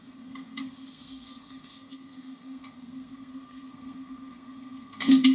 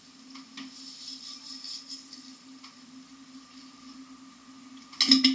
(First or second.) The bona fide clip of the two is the second